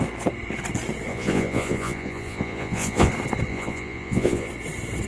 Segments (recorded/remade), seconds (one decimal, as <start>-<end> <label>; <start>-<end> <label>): 0.0-1.1 recorded; 1.1-3.1 remade; 3.1-3.5 recorded; 3.5-4.5 remade; 4.5-5.1 recorded